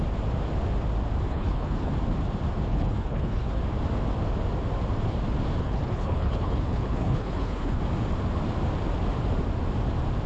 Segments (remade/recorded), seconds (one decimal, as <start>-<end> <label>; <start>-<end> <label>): 0.0-1.3 recorded; 1.3-1.9 remade; 1.9-2.7 recorded; 2.7-3.6 remade; 3.6-5.6 recorded; 5.6-7.8 remade; 7.8-10.3 recorded